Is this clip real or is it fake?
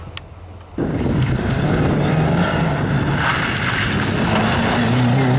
real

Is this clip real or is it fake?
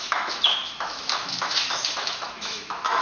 fake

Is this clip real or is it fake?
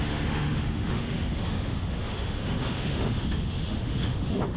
fake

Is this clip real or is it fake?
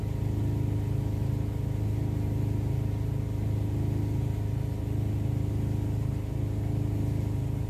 real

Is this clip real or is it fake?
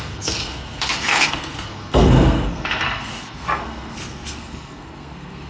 fake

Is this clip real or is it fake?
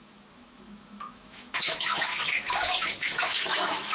fake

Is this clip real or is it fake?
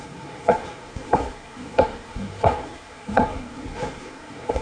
fake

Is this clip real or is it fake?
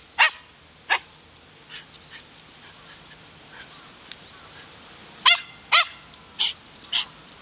real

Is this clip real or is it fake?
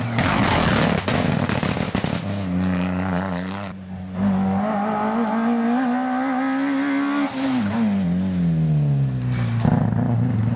real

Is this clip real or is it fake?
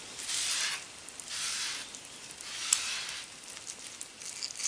real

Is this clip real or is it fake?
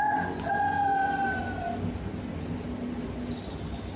real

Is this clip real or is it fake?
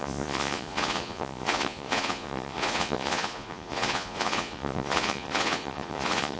fake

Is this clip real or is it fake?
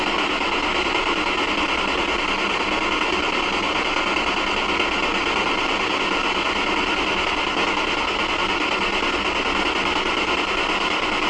real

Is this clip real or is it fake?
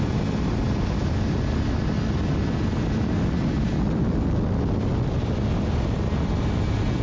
real